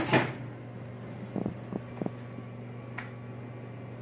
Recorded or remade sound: recorded